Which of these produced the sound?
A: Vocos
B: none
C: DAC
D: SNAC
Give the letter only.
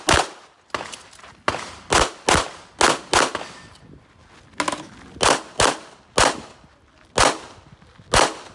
B